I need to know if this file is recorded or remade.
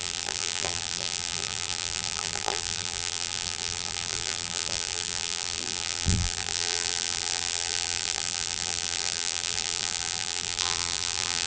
remade